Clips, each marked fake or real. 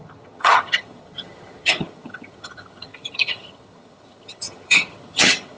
fake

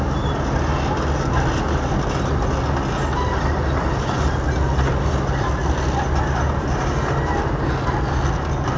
real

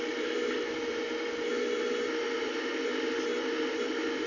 real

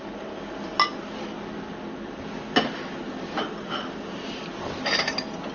real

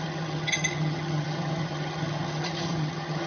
fake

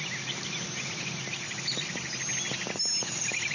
real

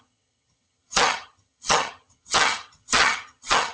fake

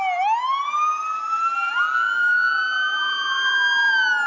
real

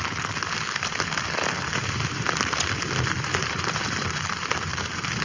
real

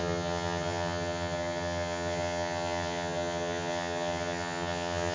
fake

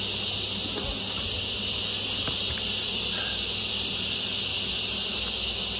real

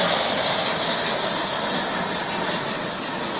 real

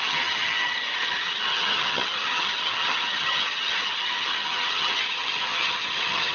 fake